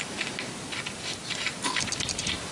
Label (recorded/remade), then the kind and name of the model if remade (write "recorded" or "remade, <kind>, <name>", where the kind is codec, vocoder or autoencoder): recorded